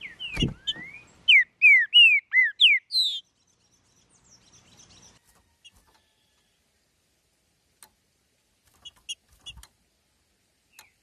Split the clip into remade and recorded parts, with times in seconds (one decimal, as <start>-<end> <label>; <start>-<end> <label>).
0.0-11.0 recorded